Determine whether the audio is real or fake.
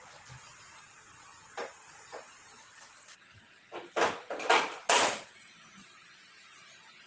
real